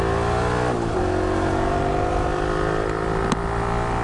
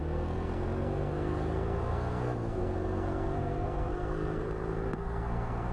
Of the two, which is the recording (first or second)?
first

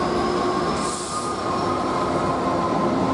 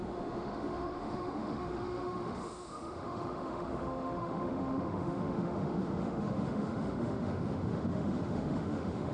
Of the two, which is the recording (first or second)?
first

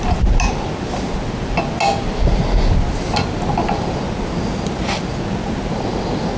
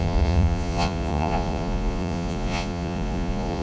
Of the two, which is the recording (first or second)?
first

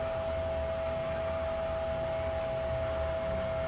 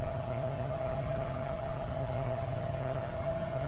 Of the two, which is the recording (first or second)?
first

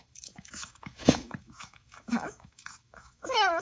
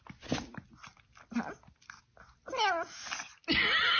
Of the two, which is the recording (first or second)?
second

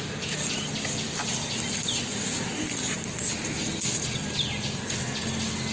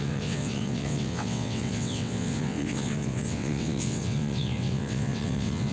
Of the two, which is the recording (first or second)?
first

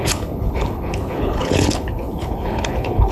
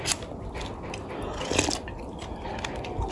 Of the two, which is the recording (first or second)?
second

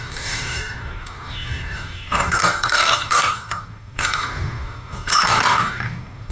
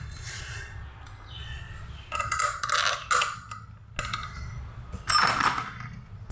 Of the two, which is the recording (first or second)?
second